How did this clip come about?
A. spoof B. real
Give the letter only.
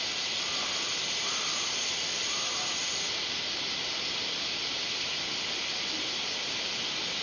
B